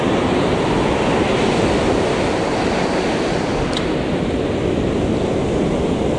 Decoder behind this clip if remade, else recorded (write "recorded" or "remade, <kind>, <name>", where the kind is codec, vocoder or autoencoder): recorded